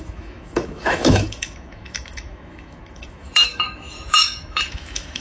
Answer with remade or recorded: remade